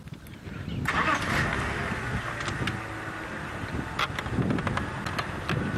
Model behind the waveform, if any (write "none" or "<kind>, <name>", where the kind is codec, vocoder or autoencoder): none